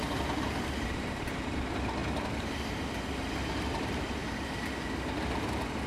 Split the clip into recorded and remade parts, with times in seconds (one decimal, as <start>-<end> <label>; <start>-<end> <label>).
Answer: 0.0-2.0 remade; 2.0-3.5 recorded; 3.5-4.2 remade; 4.2-5.9 recorded